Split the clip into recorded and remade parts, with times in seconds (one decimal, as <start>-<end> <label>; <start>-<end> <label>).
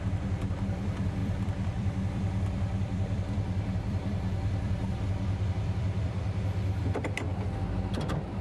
0.0-7.3 remade; 7.3-8.0 recorded; 8.0-8.4 remade